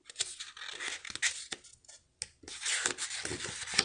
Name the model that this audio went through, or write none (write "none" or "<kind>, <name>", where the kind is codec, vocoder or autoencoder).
none